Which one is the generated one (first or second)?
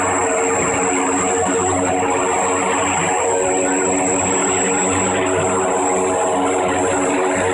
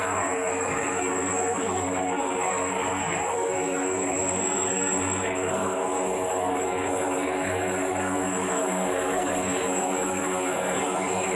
second